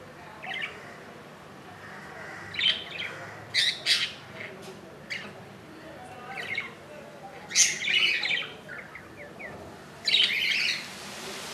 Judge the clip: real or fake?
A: real